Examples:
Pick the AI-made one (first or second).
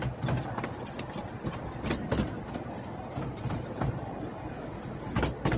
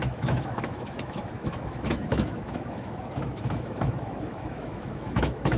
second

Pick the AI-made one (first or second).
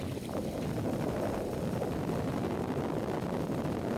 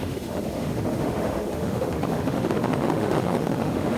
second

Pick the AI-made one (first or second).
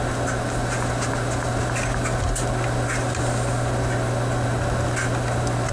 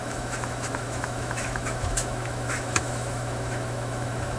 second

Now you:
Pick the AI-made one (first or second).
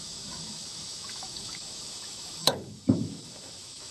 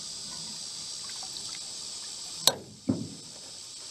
first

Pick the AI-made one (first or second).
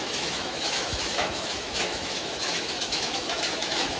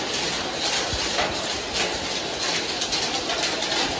first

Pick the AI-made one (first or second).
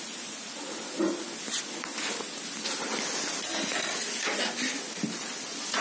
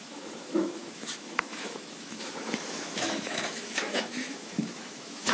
second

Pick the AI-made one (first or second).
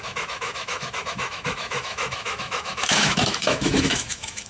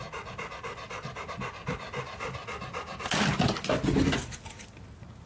first